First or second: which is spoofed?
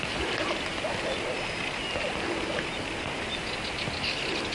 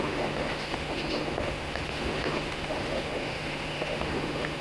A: second